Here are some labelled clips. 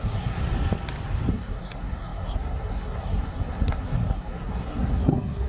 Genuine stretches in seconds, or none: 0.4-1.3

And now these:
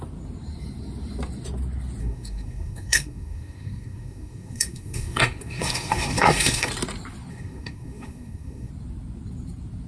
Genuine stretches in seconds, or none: 0.0-2.0; 6.7-7.3; 8.7-9.9

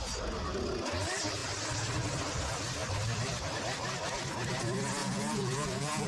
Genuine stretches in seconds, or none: 0.0-5.0

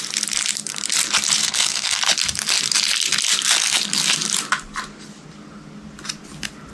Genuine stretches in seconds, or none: 0.0-1.4; 2.0-6.7

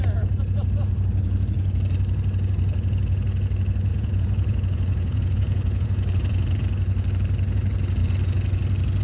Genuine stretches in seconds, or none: 0.0-3.9; 6.6-9.0